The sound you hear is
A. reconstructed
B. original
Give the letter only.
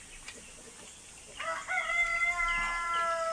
B